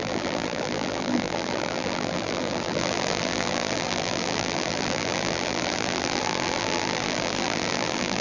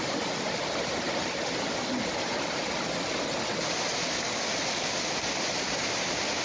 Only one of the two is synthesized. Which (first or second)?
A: first